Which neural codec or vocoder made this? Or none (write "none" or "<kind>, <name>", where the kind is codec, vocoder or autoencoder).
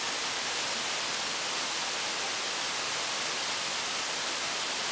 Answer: none